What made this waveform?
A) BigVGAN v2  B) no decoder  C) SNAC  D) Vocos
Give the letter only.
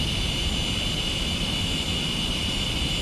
B